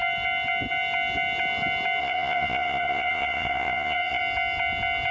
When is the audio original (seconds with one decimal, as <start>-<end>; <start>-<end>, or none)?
0.0-2.0; 4.2-5.1